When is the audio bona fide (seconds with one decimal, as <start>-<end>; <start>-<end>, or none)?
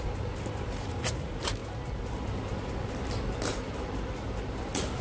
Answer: 0.0-5.0